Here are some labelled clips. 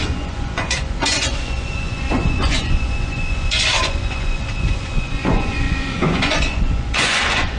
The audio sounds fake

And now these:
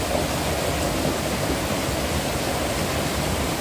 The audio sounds real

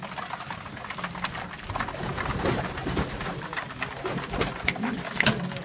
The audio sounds real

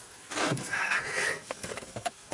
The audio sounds fake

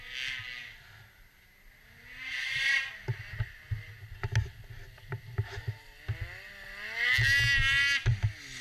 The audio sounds real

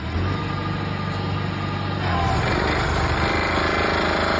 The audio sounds real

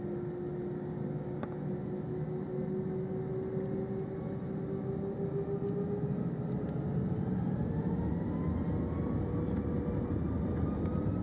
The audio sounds real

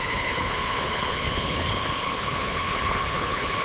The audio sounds fake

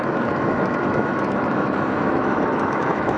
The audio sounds fake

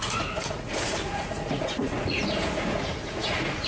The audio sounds fake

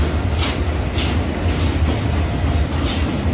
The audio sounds real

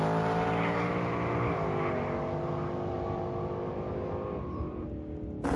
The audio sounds real